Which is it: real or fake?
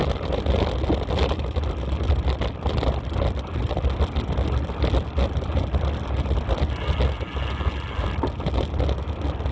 real